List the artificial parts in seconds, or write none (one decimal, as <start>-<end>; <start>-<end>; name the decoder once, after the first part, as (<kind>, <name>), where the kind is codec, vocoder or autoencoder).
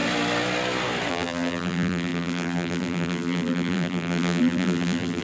1.1-5.2 (vocoder, BigVGAN v2)